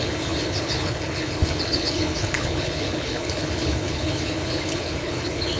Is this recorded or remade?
remade